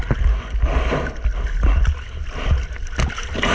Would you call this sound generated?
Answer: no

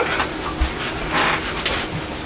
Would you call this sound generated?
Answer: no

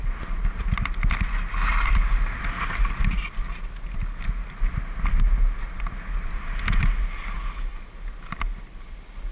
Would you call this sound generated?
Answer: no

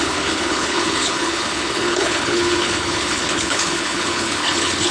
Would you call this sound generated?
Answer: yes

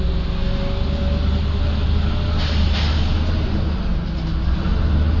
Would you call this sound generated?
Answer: no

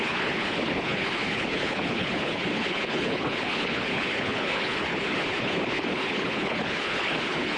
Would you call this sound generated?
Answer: yes